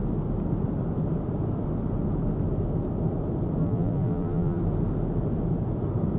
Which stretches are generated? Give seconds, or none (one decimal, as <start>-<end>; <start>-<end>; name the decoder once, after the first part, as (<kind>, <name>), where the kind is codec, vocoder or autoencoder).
3.6-4.6 (vocoder, BigVGAN v2)